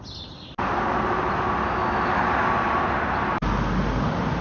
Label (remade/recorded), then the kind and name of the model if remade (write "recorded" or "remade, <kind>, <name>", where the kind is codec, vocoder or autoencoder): recorded